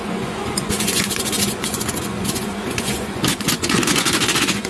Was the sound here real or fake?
fake